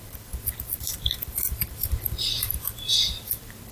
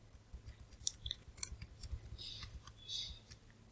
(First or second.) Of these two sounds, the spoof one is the first